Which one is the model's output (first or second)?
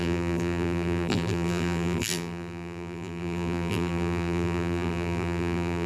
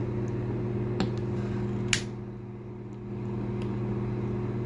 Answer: first